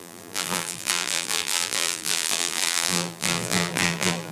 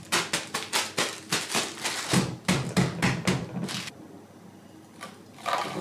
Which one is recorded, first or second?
second